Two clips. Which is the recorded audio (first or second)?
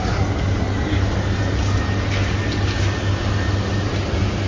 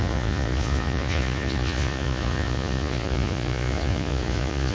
first